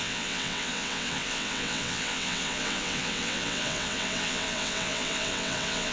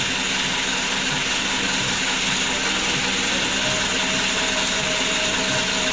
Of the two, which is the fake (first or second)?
first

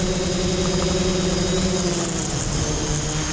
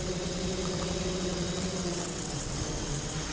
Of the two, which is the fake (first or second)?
second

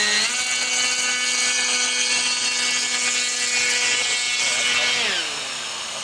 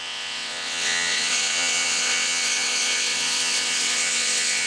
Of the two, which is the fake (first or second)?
second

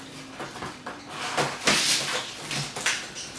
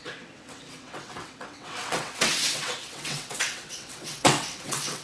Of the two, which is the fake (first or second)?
second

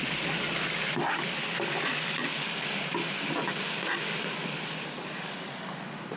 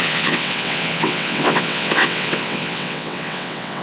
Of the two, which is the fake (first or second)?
second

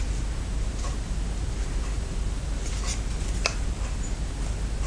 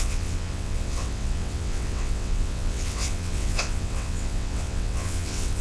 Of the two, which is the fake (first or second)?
second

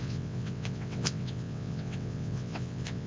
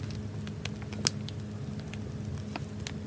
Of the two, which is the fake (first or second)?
first